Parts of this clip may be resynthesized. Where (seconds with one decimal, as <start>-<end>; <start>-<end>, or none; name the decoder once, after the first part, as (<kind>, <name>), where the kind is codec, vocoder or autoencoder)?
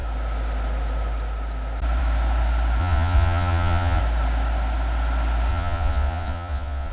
2.8-4.0 (vocoder, Vocos); 5.5-6.9